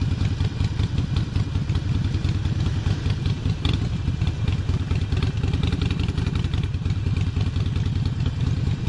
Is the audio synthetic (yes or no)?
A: no